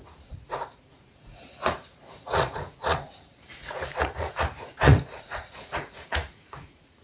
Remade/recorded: remade